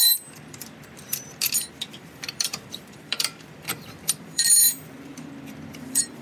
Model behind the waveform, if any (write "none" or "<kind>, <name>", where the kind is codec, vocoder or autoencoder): vocoder, BigVGAN v2